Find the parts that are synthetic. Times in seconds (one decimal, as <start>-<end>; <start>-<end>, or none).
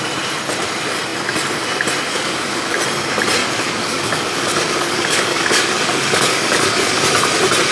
2.1-2.8; 3.4-7.0